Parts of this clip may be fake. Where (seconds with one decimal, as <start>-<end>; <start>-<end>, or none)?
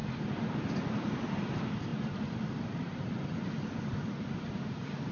none